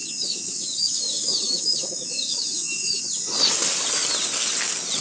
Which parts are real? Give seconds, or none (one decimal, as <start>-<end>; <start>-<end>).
3.0-5.0